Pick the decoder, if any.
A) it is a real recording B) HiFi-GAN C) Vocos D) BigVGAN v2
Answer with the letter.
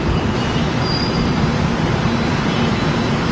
D